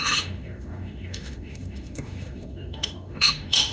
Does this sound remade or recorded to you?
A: remade